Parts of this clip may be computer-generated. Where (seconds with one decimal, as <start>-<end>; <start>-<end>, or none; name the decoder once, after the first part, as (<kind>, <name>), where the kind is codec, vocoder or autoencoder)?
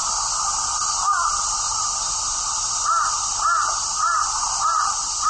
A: none